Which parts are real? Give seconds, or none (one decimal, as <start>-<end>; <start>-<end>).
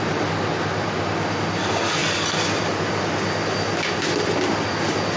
0.0-5.2